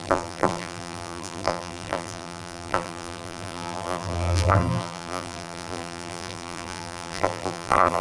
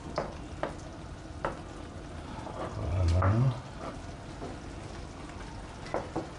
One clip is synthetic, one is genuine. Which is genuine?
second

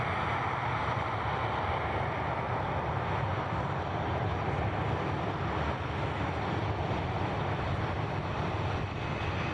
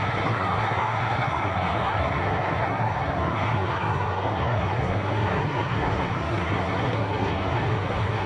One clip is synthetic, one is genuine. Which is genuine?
first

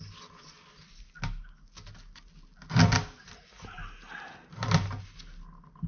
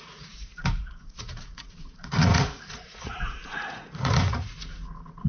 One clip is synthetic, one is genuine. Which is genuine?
first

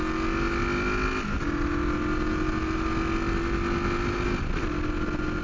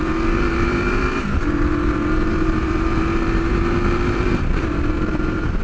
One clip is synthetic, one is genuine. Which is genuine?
first